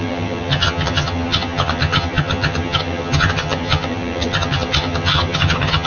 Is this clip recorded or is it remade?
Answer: remade